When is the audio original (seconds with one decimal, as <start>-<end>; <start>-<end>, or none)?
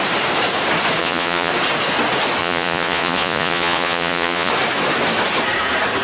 0.0-1.0; 1.5-2.4; 4.5-6.0